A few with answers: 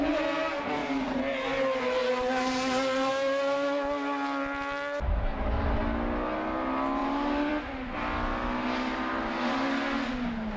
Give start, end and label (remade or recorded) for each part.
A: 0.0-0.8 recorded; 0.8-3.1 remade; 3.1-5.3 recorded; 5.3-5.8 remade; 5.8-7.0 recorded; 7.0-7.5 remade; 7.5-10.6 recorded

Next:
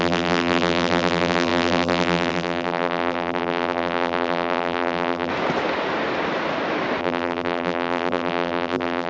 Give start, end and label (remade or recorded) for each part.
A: 0.0-5.3 remade; 5.3-7.0 recorded; 7.0-9.1 remade

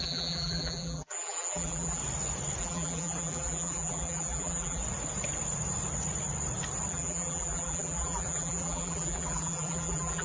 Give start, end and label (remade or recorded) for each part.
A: 0.0-2.0 remade; 2.0-2.6 recorded; 2.6-4.8 remade; 4.8-6.9 recorded; 6.9-10.2 remade

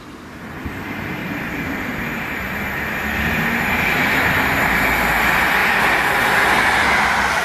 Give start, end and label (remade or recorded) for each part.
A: 0.0-1.2 recorded; 1.2-3.2 remade; 3.2-7.4 recorded

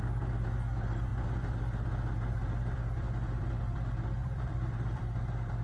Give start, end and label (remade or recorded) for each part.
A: 0.0-4.2 recorded; 4.2-5.0 remade; 5.0-5.6 recorded

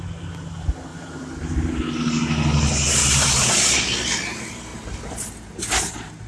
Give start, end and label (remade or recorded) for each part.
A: 0.0-0.9 recorded; 0.9-1.8 remade; 1.8-3.0 recorded; 3.0-3.5 remade; 3.5-6.3 recorded